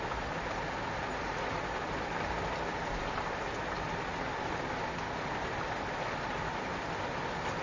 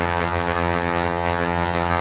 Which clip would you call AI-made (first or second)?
second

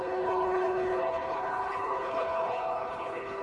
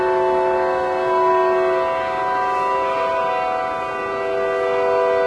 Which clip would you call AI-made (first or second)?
first